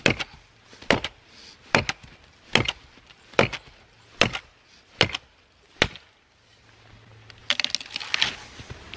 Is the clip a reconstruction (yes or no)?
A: no